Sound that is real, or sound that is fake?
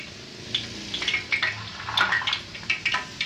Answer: real